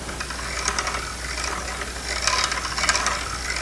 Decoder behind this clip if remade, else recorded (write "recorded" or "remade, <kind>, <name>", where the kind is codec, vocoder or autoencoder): recorded